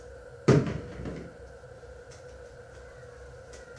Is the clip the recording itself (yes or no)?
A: yes